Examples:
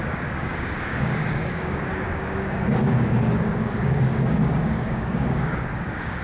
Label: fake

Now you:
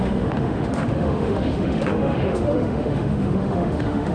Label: fake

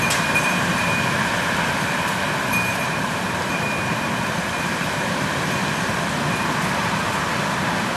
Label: fake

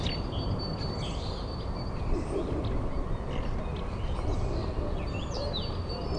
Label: real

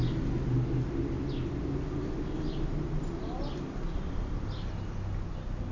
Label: real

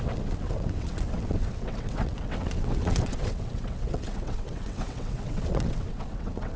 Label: fake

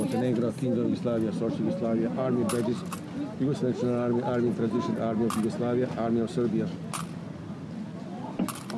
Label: real